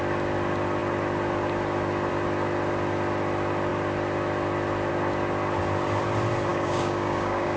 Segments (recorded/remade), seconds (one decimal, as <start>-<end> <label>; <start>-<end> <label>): 0.0-6.5 recorded; 6.5-7.6 remade